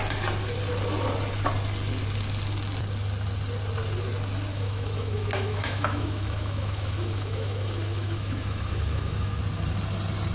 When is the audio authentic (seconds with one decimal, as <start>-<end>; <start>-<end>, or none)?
0.0-4.5; 9.4-10.3